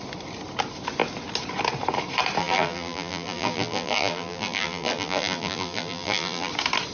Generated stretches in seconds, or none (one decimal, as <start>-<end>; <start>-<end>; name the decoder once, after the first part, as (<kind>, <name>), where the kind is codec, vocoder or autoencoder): 2.4-6.5 (vocoder, BigVGAN v2)

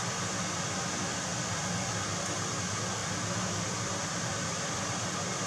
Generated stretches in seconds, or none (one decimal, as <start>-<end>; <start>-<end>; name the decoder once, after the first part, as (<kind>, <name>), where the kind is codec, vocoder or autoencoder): none

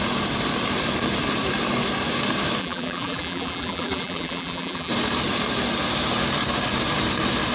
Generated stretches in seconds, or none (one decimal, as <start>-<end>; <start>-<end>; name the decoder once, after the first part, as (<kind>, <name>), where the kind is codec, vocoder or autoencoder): 2.6-4.9 (vocoder, BigVGAN v2)

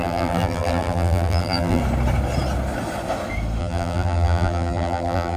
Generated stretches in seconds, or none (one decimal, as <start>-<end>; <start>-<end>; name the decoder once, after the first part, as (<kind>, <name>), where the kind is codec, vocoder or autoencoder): 0.0-1.8 (vocoder, BigVGAN v2); 3.6-5.4

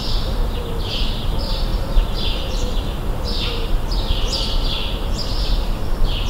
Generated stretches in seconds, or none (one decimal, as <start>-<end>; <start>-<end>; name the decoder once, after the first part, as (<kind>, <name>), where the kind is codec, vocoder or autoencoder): 1.7-5.5 (vocoder, BigVGAN v2)